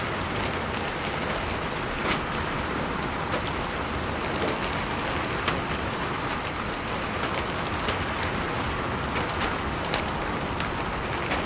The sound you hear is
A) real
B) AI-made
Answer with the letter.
A